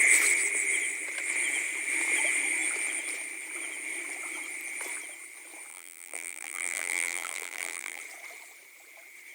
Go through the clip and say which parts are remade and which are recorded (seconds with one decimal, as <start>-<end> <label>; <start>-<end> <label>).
0.0-5.7 recorded; 5.7-8.0 remade; 8.0-9.3 recorded